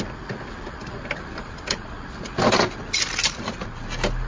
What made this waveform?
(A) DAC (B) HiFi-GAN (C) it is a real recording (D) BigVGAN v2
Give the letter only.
C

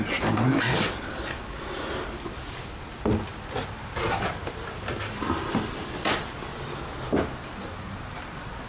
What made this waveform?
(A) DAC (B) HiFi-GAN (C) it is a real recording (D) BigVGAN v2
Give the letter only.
D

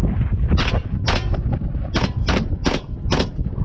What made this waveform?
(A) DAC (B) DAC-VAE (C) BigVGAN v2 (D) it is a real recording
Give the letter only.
D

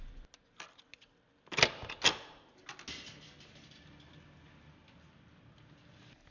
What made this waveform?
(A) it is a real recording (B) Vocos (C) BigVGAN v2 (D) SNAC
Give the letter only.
A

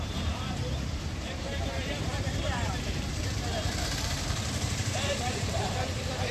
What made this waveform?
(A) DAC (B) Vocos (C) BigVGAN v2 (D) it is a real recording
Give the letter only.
C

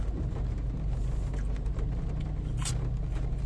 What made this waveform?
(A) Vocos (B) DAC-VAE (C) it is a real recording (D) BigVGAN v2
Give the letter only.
C